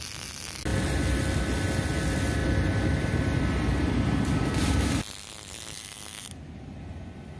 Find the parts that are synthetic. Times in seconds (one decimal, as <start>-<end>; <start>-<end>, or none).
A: none